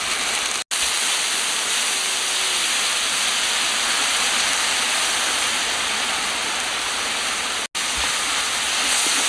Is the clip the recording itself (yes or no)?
yes